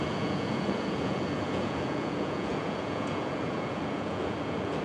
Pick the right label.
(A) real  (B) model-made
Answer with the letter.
B